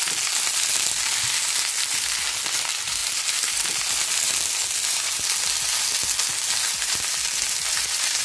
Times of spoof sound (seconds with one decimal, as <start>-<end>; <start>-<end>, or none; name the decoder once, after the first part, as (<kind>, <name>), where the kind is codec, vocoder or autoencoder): none